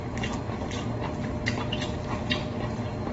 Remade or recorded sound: recorded